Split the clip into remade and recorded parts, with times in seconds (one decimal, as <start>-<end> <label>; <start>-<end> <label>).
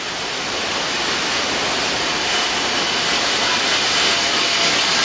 0.0-4.3 recorded; 4.3-5.0 remade